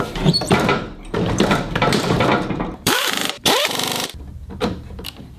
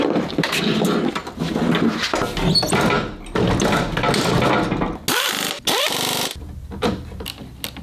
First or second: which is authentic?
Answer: second